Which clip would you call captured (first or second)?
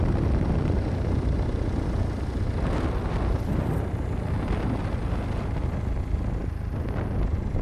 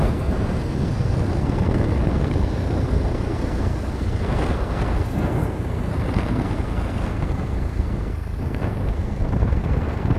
first